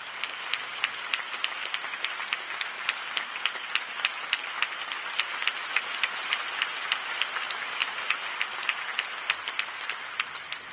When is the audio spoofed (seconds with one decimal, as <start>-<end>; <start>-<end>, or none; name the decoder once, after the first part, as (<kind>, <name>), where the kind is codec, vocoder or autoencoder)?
none